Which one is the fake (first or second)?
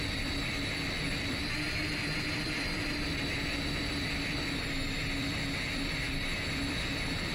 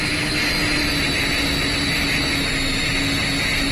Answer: first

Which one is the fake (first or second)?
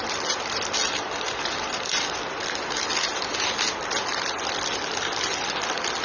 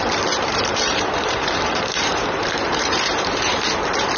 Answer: second